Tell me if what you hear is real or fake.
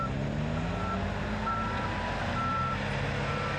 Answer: real